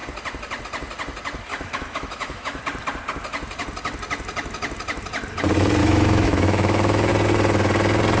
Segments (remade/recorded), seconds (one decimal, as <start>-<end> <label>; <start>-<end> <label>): 0.0-1.5 recorded; 1.5-2.6 remade; 2.6-5.8 recorded; 5.8-7.1 remade; 7.1-8.2 recorded